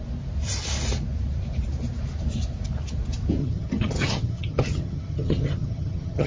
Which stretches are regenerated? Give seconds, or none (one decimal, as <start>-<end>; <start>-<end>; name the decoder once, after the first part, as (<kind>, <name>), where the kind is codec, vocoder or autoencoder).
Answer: 3.4-6.3 (vocoder, HiFi-GAN)